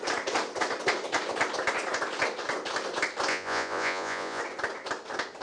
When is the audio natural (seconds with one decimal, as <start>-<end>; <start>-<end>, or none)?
0.0-3.3; 4.4-5.4